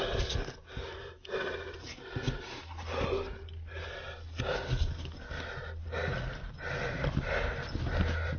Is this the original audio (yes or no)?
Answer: yes